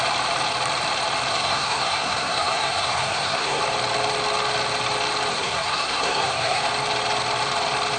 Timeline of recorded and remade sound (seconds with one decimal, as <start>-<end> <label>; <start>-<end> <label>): 0.0-1.3 recorded; 1.3-3.6 remade; 3.6-5.3 recorded; 5.3-6.6 remade; 6.6-8.0 recorded